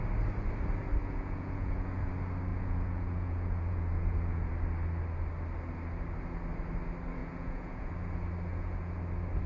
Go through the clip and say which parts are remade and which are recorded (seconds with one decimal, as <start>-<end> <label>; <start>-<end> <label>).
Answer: 0.0-1.0 recorded; 1.0-2.1 remade; 2.1-2.5 recorded; 2.5-4.5 remade; 4.5-7.2 recorded; 7.2-7.9 remade; 7.9-8.5 recorded; 8.5-9.0 remade; 9.0-9.5 recorded